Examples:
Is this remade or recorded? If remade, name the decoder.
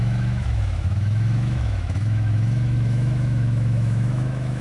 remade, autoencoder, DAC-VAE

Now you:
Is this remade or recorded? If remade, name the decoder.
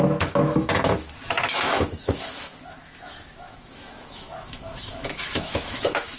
remade, autoencoder, DAC-VAE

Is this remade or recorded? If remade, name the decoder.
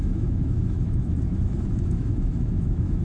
remade, autoencoder, DAC-VAE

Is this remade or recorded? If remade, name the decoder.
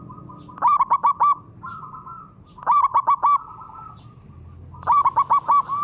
recorded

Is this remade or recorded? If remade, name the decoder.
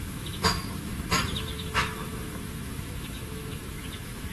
remade, autoencoder, DAC-VAE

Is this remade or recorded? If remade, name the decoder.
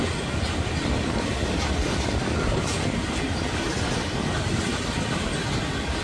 recorded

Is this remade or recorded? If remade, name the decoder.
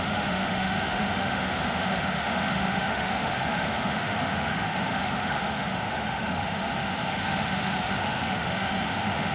remade, autoencoder, DAC-VAE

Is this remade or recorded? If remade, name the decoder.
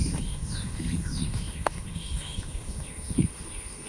remade, autoencoder, DAC-VAE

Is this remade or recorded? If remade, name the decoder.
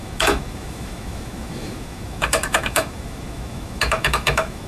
remade, autoencoder, DAC-VAE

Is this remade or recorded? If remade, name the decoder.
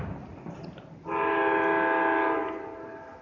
recorded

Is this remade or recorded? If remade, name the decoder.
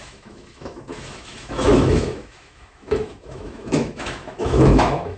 remade, autoencoder, DAC-VAE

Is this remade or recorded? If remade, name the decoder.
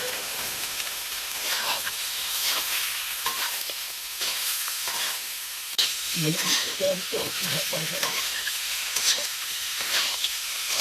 remade, autoencoder, DAC-VAE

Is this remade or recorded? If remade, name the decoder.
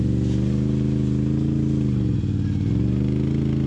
recorded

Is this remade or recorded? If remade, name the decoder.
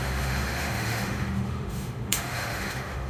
remade, autoencoder, DAC-VAE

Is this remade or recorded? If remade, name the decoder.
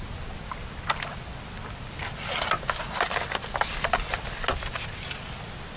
recorded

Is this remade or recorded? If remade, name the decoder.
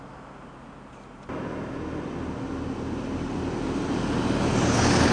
recorded